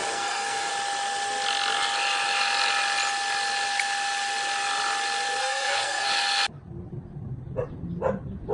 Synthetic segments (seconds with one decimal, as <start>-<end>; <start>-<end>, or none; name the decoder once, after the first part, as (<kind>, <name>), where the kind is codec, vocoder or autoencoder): 0.0-0.7 (codec, SNAC); 5.4-6.1